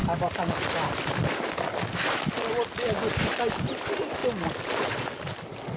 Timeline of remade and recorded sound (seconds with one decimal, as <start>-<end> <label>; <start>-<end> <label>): 0.0-5.8 recorded